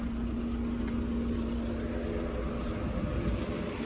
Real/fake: real